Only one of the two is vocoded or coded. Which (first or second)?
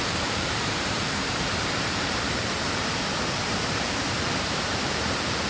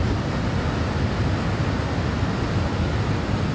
first